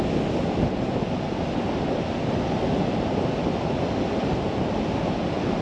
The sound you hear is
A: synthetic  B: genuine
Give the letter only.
B